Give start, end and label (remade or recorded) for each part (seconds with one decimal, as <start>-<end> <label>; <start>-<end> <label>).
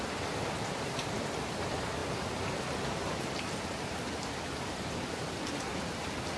0.0-2.0 remade; 2.0-5.8 recorded; 5.8-6.4 remade